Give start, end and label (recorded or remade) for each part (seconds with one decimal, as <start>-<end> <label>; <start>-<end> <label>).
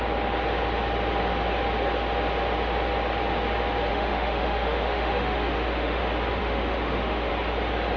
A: 0.0-3.9 recorded; 3.9-6.0 remade; 6.0-6.4 recorded; 6.4-7.3 remade; 7.3-8.0 recorded